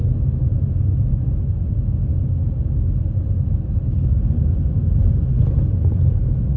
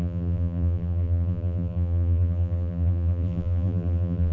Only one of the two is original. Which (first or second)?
first